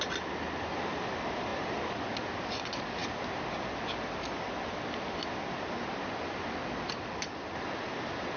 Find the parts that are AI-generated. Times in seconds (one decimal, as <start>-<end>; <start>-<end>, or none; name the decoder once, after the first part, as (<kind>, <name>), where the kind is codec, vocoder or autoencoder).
none